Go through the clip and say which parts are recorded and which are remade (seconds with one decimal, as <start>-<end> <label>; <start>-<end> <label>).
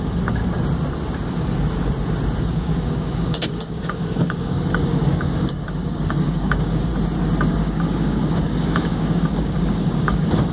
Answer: 0.0-0.4 remade; 0.4-2.4 recorded; 2.4-6.9 remade; 6.9-7.5 recorded; 7.5-10.5 remade